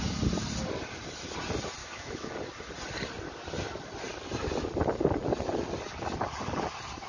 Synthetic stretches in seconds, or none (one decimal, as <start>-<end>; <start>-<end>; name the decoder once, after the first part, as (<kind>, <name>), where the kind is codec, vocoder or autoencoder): 1.8-2.3 (autoencoder, DAC-VAE)